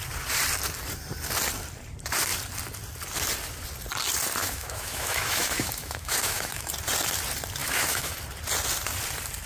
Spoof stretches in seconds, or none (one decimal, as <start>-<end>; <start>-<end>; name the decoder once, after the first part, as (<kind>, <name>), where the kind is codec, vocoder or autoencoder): 4.4-6.7 (autoencoder, DAC-VAE); 7.6-8.1